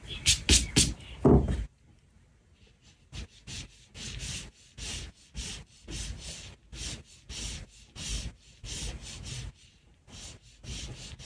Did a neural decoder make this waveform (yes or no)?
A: no